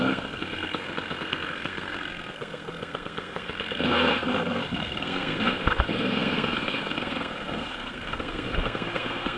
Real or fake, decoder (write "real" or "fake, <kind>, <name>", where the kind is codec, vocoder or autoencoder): fake, codec, SNAC